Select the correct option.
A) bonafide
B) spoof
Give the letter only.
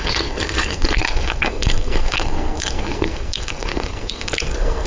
B